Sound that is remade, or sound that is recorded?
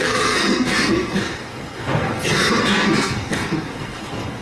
remade